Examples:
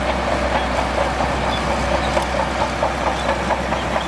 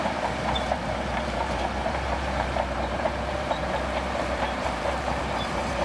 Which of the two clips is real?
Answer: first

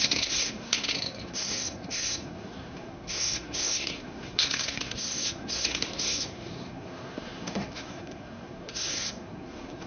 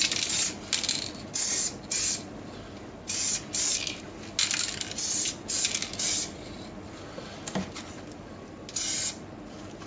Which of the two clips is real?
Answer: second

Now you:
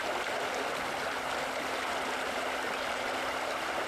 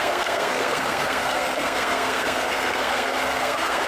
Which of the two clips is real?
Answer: first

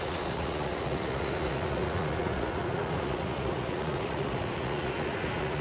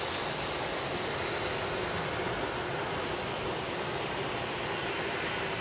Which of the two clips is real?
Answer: second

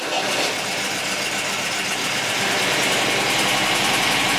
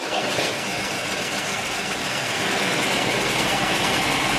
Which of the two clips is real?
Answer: first